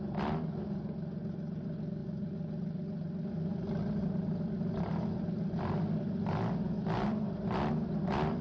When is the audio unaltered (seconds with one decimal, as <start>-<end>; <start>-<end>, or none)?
0.0-7.1; 7.7-8.4